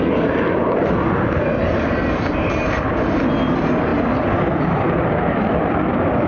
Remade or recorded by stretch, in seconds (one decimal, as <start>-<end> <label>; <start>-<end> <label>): 0.0-3.9 remade; 3.9-4.8 recorded; 4.8-6.3 remade